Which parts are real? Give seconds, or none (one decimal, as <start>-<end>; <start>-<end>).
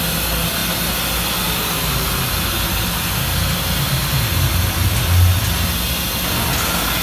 0.0-7.0